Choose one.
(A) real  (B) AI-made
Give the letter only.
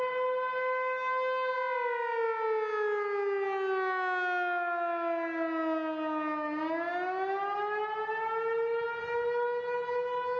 A